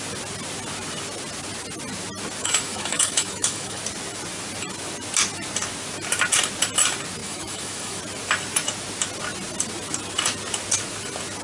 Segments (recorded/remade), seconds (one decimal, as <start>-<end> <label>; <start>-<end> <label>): 0.0-2.4 recorded; 2.4-3.8 remade; 3.8-7.2 recorded; 7.2-8.0 remade; 8.0-11.4 recorded